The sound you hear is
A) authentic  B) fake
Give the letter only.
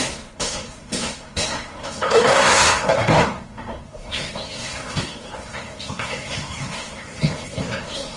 B